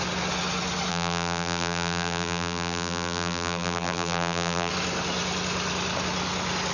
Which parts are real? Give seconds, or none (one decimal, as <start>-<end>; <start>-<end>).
0.0-0.9; 4.7-6.7